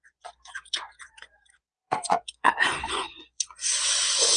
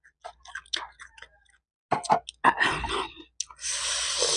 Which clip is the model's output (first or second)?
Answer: first